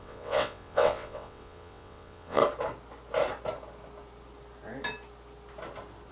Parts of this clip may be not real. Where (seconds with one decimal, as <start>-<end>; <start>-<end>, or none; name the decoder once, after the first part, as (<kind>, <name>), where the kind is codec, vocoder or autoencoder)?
0.0-2.4 (vocoder, WaveNeXt)